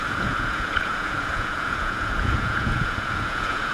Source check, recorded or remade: remade